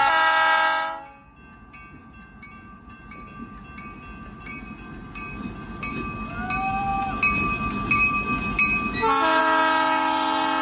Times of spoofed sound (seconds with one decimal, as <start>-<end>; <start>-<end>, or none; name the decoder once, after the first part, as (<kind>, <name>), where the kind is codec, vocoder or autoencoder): 2.0-3.5 (vocoder, BigVGAN v2)